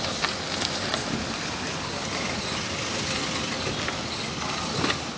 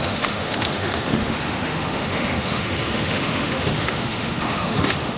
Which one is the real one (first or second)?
first